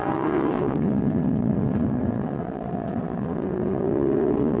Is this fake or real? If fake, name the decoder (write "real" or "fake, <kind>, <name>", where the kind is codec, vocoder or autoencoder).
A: fake, vocoder, WaveNeXt